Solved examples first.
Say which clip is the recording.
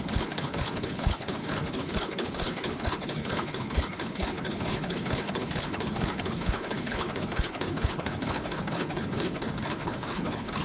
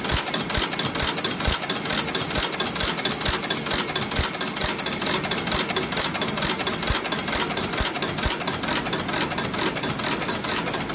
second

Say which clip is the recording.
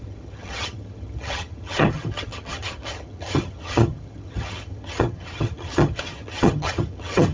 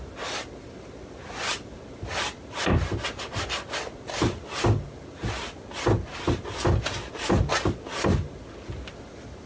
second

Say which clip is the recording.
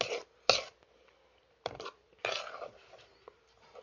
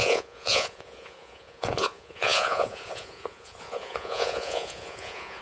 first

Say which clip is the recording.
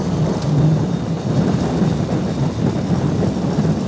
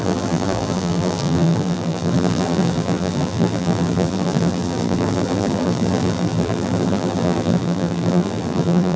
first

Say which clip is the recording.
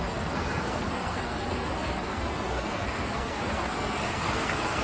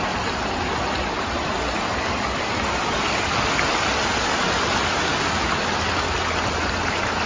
second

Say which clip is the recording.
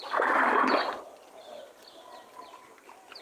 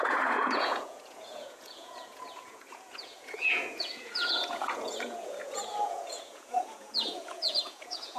first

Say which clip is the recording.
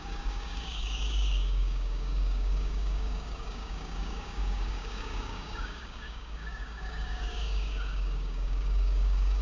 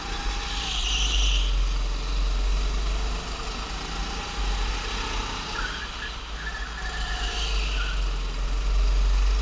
second